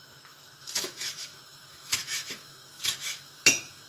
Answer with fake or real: fake